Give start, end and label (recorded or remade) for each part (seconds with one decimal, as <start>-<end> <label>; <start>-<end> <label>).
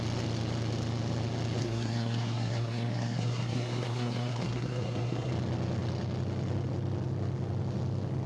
0.0-1.6 recorded; 1.6-5.3 remade; 5.3-8.3 recorded